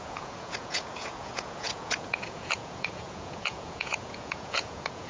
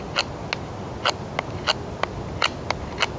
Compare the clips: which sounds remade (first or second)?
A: first